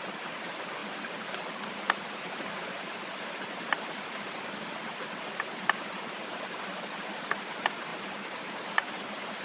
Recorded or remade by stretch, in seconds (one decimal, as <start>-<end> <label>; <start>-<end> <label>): 0.0-9.4 recorded